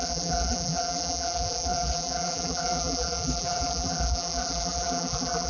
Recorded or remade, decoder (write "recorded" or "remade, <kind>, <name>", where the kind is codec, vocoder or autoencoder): remade, vocoder, BigVGAN v2